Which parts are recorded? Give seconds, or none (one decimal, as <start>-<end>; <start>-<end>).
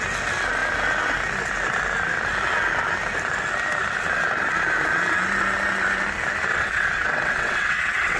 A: 0.0-6.5